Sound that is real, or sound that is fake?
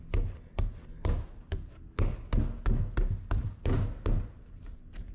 real